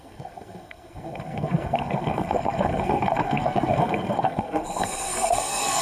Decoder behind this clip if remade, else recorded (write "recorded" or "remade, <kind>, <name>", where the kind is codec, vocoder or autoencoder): remade, codec, SNAC